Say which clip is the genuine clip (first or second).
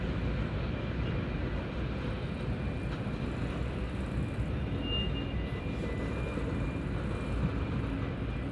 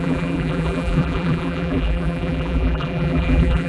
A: first